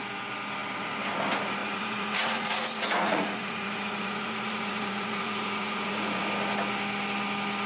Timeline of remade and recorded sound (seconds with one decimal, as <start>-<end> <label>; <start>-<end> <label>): 0.0-1.6 recorded; 1.6-6.2 remade; 6.2-7.7 recorded